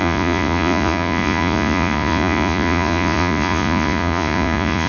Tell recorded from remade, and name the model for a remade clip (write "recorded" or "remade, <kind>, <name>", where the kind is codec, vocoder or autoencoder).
remade, vocoder, Vocos